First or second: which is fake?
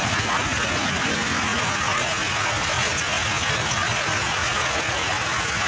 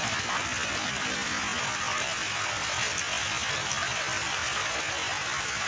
first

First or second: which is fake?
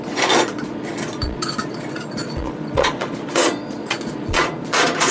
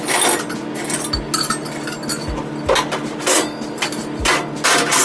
first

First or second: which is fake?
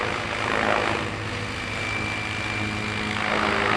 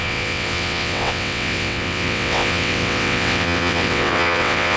second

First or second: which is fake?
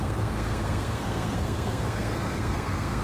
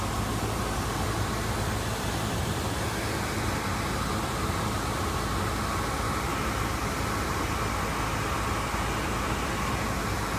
first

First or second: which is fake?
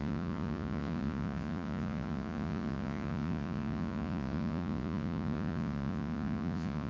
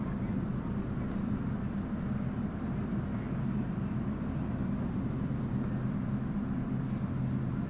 first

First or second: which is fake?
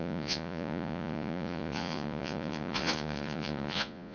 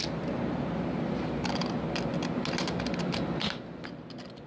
first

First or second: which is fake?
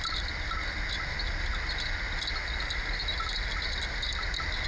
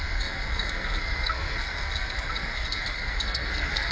second